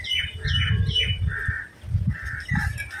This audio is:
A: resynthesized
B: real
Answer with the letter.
B